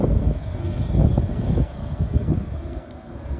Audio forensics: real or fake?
fake